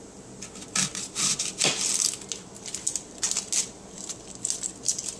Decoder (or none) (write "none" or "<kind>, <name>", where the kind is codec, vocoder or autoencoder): none